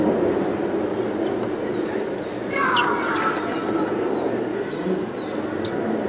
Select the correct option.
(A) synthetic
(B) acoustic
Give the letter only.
B